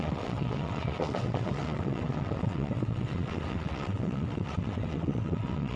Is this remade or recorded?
remade